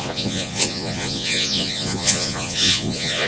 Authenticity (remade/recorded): remade